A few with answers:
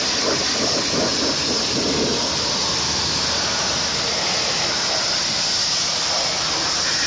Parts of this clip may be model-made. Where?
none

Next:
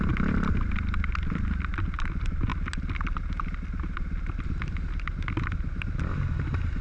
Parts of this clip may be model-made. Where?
none

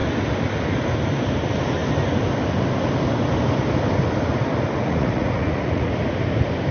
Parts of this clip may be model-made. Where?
4.8-5.9 (vocoder, Vocos)

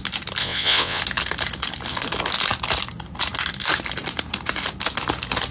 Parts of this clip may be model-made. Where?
0.4-1.0 (vocoder, WaveNeXt)

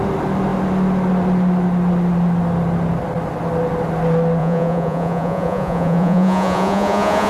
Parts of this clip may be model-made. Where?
4.4-7.3 (vocoder, Vocos)

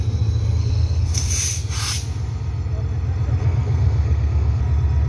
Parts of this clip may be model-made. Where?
0.6-1.3 (codec, SNAC); 3.4-4.6

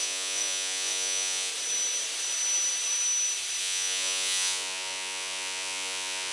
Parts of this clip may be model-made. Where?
0.0-1.5 (vocoder, Vocos); 3.6-6.3

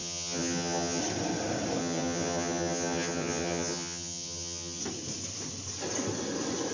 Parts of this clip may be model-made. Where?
0.0-1.0 (vocoder, HiFi-GAN); 1.8-4.8